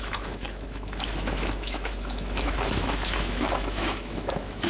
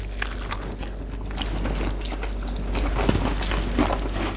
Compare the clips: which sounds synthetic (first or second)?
first